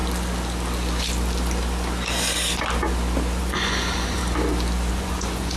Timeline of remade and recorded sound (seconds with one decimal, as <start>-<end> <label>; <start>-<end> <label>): 0.0-3.4 recorded; 3.4-4.2 remade; 4.2-4.9 recorded; 4.9-5.6 remade